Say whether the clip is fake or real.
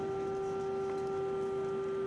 real